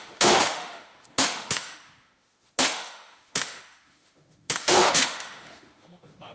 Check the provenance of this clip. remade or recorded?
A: remade